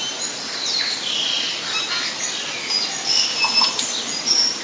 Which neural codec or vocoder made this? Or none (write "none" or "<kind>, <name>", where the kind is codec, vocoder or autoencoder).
none